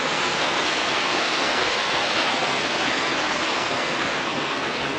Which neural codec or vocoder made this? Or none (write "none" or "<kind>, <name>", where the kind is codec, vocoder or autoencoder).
codec, SNAC